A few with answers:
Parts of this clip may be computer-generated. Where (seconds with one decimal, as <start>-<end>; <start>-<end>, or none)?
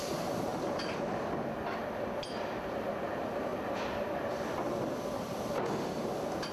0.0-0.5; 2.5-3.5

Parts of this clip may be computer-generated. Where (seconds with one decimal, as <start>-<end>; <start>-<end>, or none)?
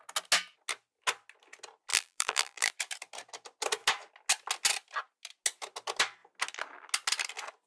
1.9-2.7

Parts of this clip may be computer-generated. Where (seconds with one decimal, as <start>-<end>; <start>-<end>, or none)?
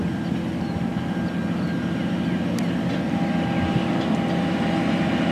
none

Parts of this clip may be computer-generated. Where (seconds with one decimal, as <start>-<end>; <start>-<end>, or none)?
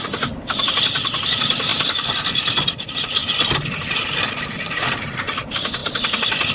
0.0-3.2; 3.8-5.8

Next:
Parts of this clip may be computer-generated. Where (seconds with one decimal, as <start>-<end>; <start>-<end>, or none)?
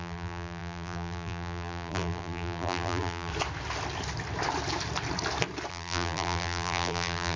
0.0-3.3; 5.7-7.4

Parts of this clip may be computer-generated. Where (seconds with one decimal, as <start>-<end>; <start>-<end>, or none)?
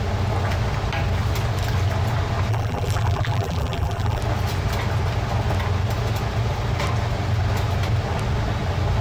2.5-4.2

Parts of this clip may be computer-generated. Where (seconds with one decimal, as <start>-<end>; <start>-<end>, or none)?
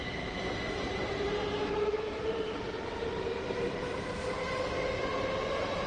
0.9-4.4